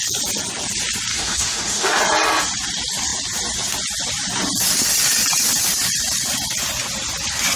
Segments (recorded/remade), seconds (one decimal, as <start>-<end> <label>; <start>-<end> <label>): 0.0-1.1 recorded; 1.1-2.0 remade; 2.0-7.6 recorded